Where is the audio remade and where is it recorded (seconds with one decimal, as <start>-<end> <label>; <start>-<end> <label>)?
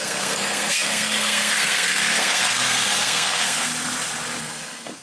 0.0-3.7 remade; 3.7-4.4 recorded; 4.4-5.0 remade